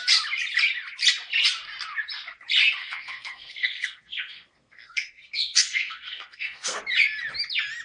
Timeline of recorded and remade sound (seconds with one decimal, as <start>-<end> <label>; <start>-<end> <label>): 0.0-2.8 recorded; 2.8-6.8 remade; 6.8-7.8 recorded